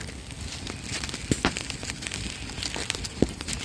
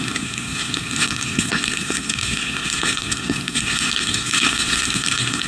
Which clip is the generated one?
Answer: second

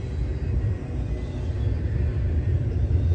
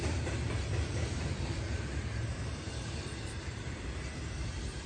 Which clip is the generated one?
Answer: second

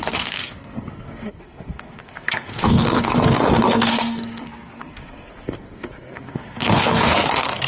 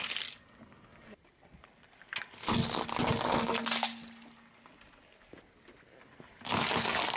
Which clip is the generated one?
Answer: first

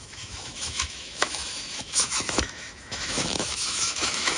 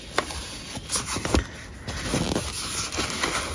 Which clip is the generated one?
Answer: first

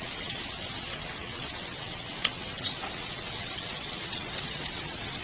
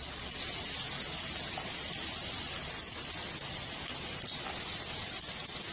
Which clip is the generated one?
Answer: first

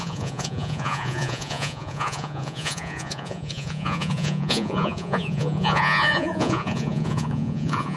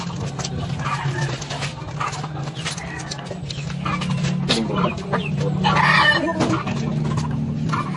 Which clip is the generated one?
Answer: first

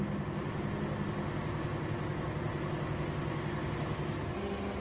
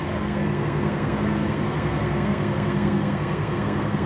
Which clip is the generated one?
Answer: second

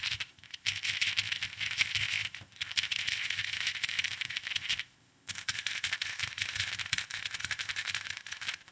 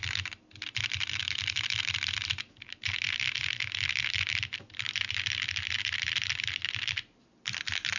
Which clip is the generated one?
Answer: first